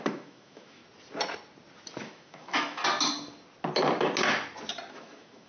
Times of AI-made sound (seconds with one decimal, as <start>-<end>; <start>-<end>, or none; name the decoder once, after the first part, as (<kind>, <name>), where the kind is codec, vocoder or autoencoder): 0.0-0.8 (autoencoder, DAC-VAE); 2.0-2.8; 4.9-5.5